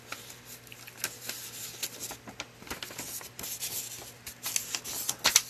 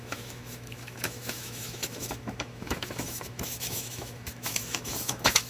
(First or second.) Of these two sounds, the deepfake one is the second